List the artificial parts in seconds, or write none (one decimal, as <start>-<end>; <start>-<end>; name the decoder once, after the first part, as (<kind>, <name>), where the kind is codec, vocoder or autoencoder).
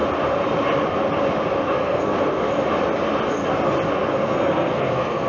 1.7-2.5 (codec, SNAC); 4.2-5.3